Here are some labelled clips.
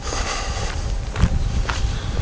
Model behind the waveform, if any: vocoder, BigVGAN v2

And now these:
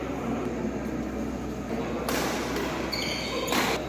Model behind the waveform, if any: none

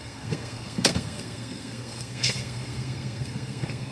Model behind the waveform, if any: codec, SNAC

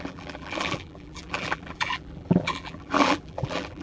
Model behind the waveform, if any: vocoder, BigVGAN v2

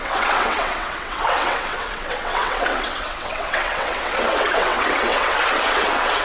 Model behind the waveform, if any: vocoder, WaveNeXt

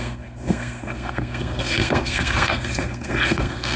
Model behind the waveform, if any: codec, SNAC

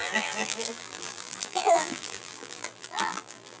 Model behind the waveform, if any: vocoder, BigVGAN v2